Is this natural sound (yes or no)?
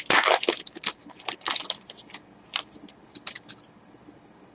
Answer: yes